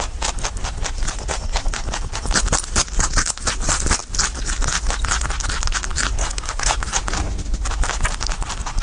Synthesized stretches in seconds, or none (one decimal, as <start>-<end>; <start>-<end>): 6.2-6.8